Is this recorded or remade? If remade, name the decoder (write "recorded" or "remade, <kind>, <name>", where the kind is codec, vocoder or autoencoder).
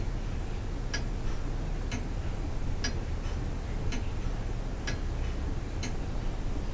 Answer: recorded